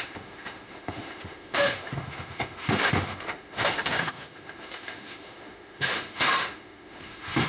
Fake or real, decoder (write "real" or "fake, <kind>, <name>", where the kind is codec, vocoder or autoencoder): fake, autoencoder, DAC-VAE